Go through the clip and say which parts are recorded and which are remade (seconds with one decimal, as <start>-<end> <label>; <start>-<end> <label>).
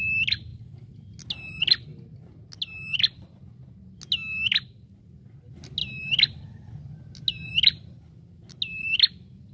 0.0-9.5 recorded